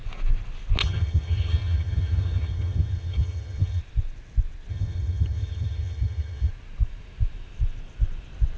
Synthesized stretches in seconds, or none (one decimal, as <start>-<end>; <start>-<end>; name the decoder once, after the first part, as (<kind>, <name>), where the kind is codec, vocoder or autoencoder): 0.8-3.8 (vocoder, HiFi-GAN); 4.7-6.5